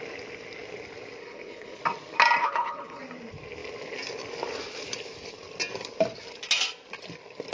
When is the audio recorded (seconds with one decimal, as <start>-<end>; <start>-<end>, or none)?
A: 0.0-1.2; 1.8-2.4; 3.0-7.5